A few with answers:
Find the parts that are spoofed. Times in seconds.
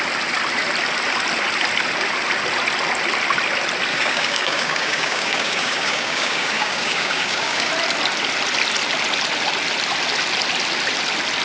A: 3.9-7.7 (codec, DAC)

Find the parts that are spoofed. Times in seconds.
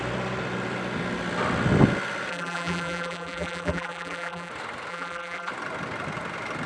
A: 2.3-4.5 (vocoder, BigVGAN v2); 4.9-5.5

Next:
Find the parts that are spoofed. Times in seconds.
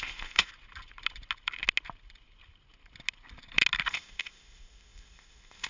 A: 0.0-0.5 (codec, ZipCodec); 3.9-5.7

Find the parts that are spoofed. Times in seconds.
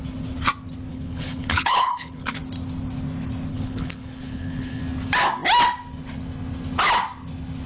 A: 0.9-2.4 (codec, HILCodec); 3.5-4.8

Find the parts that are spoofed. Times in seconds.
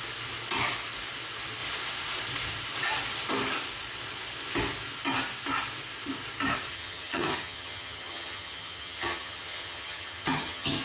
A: 6.7-10.8 (vocoder, HiFi-GAN)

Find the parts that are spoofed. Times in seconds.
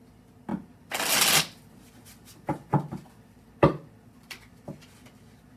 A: none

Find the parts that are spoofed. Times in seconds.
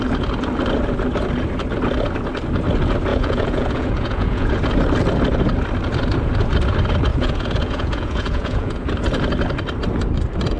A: 3.1-4.5 (vocoder, Vocos); 7.1-8.9